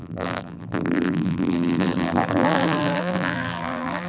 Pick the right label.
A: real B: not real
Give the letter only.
B